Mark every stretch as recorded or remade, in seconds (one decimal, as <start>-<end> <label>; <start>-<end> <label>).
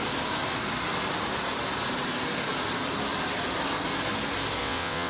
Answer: 0.0-4.6 recorded; 4.6-5.1 remade